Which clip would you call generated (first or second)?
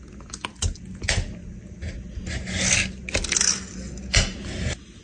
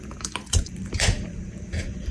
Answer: second